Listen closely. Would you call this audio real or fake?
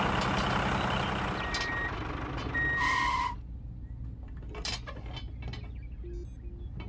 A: real